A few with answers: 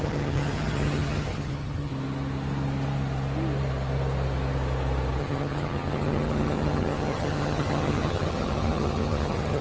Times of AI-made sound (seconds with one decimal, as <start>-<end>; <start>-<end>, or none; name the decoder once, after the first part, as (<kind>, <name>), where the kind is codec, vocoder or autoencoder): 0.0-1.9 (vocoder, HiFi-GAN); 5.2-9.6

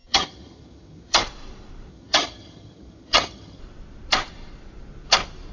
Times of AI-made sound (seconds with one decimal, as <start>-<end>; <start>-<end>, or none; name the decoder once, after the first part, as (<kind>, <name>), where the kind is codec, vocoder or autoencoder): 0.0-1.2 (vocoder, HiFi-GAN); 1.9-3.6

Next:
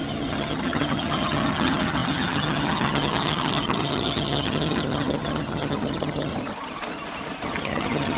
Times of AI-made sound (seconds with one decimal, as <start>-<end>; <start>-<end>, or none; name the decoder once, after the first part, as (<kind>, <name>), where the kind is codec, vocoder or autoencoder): 0.0-6.3 (vocoder, HiFi-GAN); 7.6-8.2